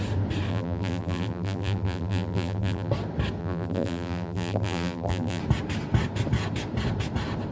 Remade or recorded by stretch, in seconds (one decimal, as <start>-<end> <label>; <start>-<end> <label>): 0.0-0.5 recorded; 0.5-2.9 remade; 2.9-3.4 recorded; 3.4-5.4 remade; 5.4-7.5 recorded